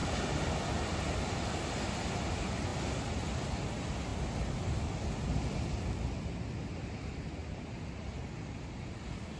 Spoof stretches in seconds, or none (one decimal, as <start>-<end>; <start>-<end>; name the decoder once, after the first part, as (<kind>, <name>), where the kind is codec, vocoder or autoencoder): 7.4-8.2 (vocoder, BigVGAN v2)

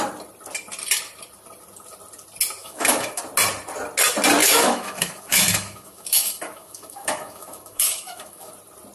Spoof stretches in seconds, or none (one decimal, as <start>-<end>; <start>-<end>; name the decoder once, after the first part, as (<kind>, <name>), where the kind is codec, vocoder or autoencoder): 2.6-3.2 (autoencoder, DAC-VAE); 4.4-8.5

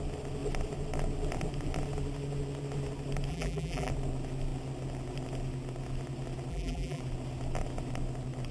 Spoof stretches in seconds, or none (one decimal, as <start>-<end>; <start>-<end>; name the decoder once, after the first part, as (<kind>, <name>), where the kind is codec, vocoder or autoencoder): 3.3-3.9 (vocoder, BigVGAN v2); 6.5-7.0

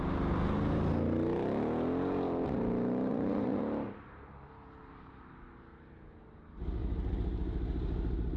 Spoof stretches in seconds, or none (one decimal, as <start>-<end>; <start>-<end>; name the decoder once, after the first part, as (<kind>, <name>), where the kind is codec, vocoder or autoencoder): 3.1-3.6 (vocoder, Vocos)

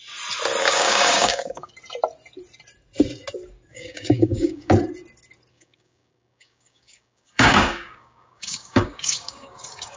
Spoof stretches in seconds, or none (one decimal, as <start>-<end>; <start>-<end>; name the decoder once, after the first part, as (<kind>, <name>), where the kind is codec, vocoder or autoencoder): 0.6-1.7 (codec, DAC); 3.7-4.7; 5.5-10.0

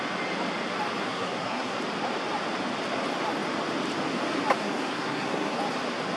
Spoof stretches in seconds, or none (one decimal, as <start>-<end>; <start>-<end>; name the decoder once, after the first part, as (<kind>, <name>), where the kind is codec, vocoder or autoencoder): 1.0-1.8 (codec, SNAC); 4.6-5.6